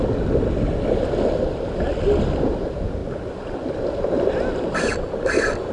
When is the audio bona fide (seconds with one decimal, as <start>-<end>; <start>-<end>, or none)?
0.0-5.7